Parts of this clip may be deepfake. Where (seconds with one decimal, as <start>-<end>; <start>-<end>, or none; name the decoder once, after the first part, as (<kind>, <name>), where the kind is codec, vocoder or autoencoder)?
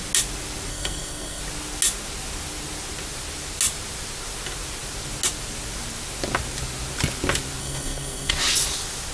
0.7-1.4 (codec, SNAC); 7.6-8.3